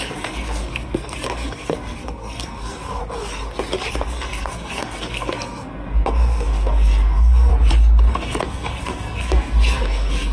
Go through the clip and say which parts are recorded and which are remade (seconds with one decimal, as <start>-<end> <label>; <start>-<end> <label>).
0.0-3.0 remade; 3.0-3.9 recorded; 3.9-7.5 remade; 7.5-8.1 recorded; 8.1-10.3 remade